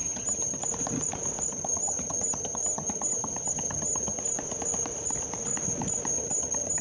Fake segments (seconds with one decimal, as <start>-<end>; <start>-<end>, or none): 0.0-0.6; 1.5-4.2; 6.1-6.8